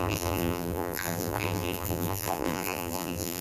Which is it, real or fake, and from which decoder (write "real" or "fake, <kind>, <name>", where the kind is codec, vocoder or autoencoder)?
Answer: fake, vocoder, BigVGAN v2